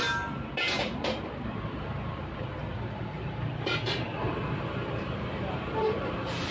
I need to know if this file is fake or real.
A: fake